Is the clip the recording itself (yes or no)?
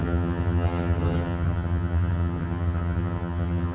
no